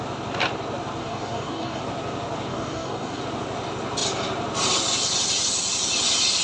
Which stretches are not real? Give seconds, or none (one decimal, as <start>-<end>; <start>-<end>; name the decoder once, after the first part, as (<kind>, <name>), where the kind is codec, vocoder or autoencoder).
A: 1.0-1.8 (codec, DAC); 2.5-3.2